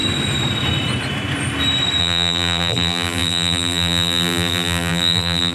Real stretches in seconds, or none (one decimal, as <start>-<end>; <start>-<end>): 0.0-2.0